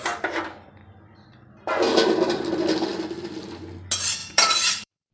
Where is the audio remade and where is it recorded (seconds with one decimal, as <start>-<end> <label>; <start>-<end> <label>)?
0.0-2.9 recorded; 2.9-3.5 remade; 3.5-4.2 recorded; 4.2-5.1 remade